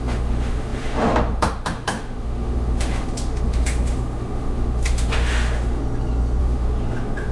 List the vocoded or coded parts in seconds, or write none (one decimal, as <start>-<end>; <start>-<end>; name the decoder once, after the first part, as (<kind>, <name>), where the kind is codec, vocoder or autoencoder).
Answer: 0.0-5.8 (autoencoder, DAC-VAE); 6.4-7.3